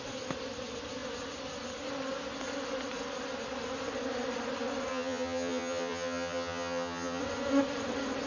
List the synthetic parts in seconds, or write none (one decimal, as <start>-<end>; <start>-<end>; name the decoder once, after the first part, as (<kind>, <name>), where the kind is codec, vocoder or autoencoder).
4.9-7.2 (vocoder, HiFi-GAN)